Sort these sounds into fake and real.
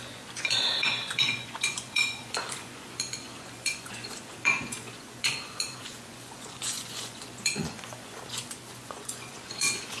fake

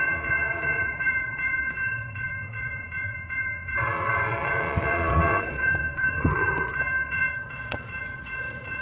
fake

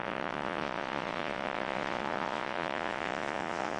fake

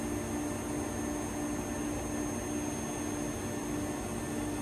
real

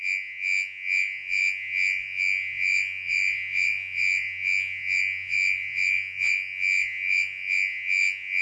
fake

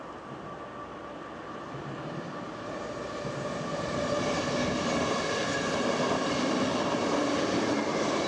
real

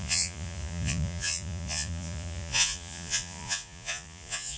fake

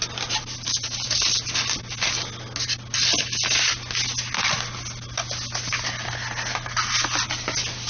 real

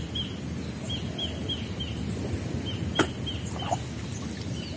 real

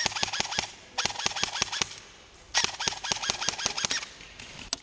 real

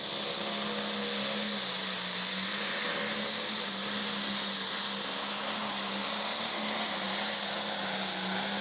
real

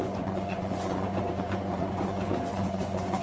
fake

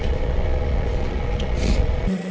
fake